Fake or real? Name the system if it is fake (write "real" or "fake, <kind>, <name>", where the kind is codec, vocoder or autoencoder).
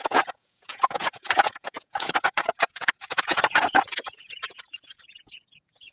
fake, vocoder, Vocos